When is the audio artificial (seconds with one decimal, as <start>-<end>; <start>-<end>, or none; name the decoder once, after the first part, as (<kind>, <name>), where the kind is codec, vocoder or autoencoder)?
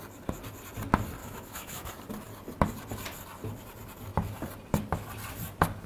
1.2-1.9 (autoencoder, DAC-VAE)